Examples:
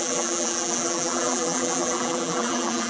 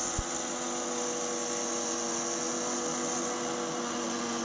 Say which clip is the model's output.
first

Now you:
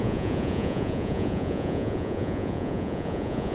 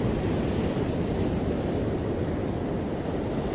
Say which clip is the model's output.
first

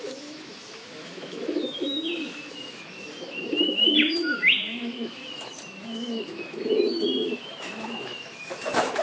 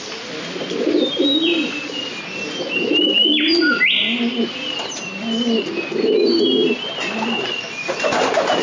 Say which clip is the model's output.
first